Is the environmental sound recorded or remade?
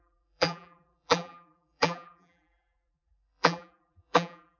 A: remade